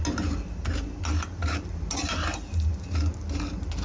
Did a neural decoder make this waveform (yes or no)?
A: no